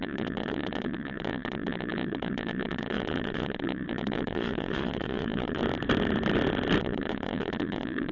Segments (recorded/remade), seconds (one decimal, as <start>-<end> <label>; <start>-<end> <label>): 0.0-5.6 remade; 5.6-6.8 recorded; 6.8-8.1 remade